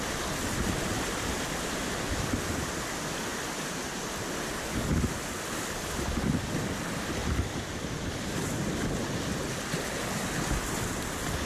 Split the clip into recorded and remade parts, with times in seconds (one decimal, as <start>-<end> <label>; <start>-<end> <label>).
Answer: 0.0-3.3 remade; 3.3-5.0 recorded; 5.0-7.2 remade; 7.2-10.7 recorded; 10.7-11.5 remade